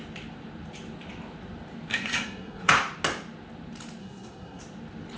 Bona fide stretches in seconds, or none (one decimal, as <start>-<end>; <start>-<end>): 0.0-1.9; 2.7-4.0; 4.6-5.2